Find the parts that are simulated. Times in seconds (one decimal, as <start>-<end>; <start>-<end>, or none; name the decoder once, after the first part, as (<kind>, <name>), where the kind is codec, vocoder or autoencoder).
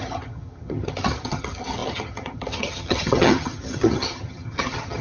0.0-5.0 (vocoder, HiFi-GAN)